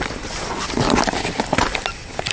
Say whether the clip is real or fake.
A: real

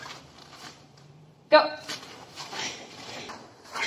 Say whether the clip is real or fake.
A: fake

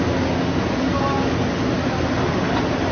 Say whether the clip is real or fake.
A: real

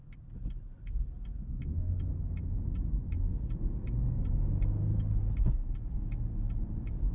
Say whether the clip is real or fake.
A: real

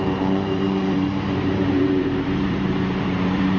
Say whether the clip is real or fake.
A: fake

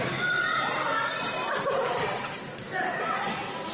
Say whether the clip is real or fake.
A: real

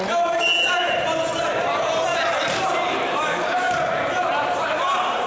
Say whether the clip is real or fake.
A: fake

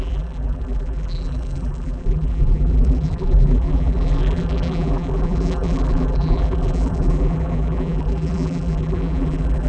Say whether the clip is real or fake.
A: fake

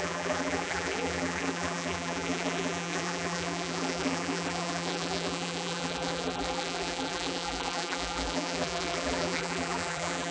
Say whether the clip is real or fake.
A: fake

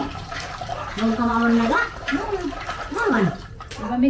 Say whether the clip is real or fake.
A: fake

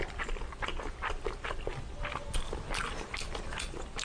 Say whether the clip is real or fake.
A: real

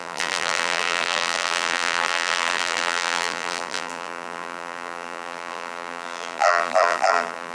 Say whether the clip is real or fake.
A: fake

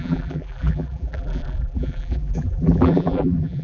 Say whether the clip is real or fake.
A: fake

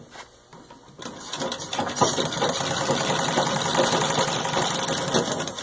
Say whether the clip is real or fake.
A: real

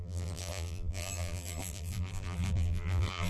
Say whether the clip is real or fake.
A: fake